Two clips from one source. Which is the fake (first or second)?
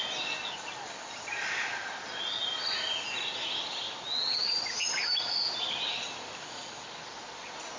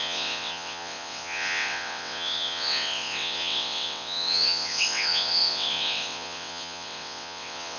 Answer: second